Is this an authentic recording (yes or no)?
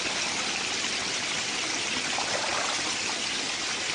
yes